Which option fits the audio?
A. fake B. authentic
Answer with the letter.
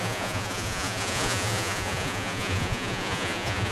A